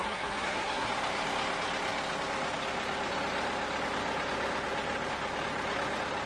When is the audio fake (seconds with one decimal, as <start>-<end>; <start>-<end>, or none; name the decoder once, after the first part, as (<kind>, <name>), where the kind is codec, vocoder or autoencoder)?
0.0-0.9 (codec, SNAC)